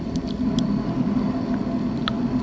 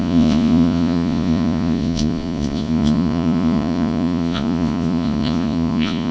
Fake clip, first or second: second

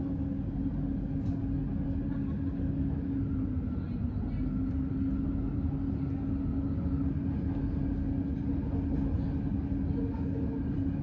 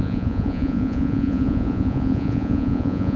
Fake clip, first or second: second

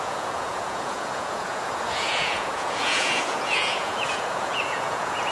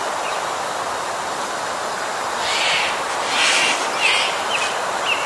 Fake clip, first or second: first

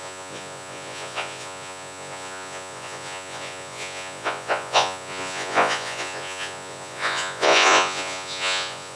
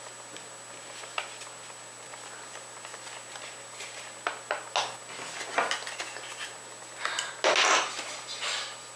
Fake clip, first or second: first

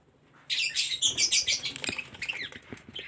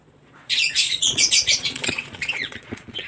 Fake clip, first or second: second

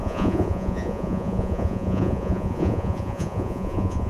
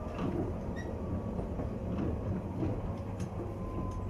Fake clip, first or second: first